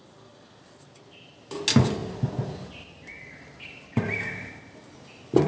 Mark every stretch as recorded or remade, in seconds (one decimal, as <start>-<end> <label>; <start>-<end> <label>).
0.0-5.5 recorded